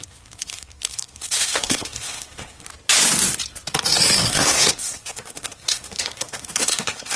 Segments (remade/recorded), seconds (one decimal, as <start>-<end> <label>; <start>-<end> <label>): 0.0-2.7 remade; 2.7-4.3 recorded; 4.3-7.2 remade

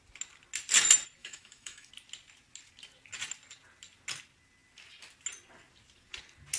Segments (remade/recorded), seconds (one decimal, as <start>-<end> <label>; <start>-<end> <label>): 0.0-1.2 recorded; 1.2-1.9 remade; 1.9-6.6 recorded

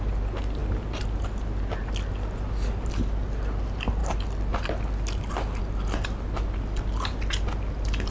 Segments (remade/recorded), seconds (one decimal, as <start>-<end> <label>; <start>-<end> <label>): 0.0-8.1 recorded

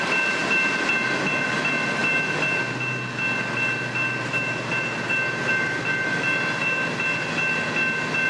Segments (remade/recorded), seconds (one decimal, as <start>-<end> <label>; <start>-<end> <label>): 0.0-8.3 recorded